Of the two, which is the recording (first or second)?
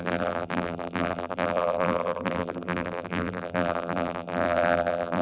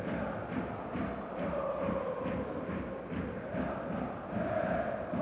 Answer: second